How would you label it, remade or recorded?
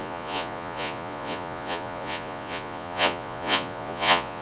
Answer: remade